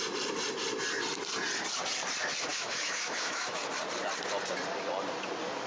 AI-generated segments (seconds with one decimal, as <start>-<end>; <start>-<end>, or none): 2.5-3.6